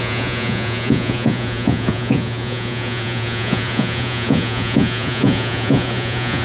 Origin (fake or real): fake